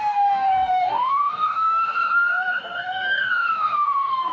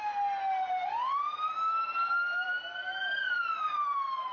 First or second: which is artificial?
first